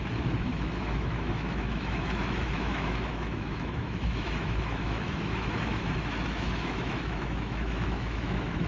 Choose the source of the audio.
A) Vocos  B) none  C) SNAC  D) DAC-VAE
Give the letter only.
D